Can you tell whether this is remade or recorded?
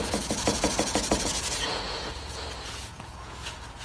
remade